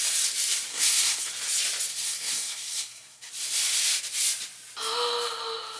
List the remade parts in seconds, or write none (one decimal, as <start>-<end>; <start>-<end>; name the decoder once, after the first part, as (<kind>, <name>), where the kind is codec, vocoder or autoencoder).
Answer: 0.7-1.3 (codec, SNAC); 1.9-3.3